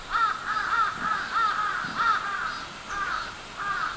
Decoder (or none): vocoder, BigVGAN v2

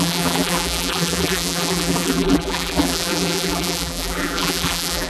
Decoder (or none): vocoder, BigVGAN v2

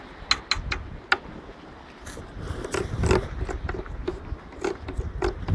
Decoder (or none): none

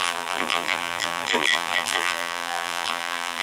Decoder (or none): vocoder, BigVGAN v2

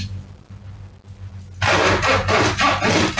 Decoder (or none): none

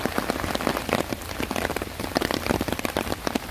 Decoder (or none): none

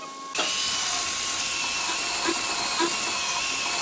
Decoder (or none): none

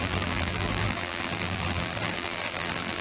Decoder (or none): vocoder, BigVGAN v2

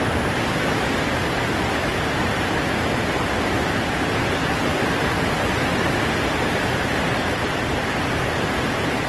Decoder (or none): none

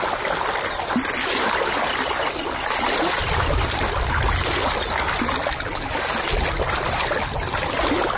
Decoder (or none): none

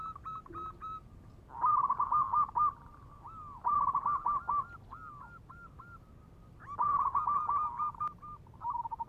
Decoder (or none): none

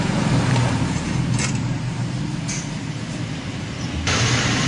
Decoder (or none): vocoder, BigVGAN v2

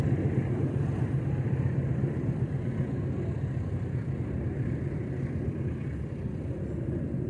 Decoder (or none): none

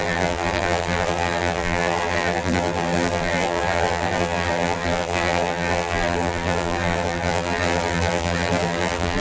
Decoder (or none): vocoder, BigVGAN v2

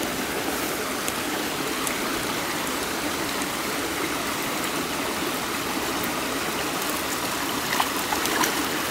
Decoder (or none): none